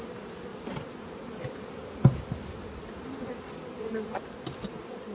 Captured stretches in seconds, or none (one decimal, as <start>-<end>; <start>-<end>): 0.0-5.1